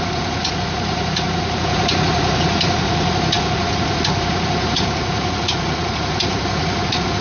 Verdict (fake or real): fake